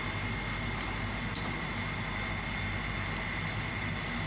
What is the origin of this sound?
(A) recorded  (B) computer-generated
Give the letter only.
A